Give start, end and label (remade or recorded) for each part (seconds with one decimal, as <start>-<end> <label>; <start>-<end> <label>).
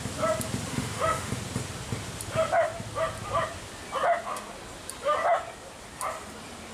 0.0-0.7 recorded; 0.7-1.3 remade; 1.3-6.7 recorded